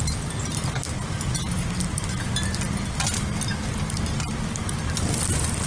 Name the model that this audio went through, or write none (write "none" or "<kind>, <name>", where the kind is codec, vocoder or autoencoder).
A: none